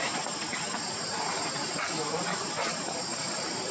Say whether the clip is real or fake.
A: fake